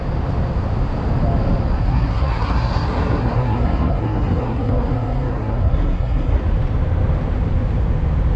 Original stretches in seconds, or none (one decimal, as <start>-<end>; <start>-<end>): 0.0-1.8; 6.4-8.4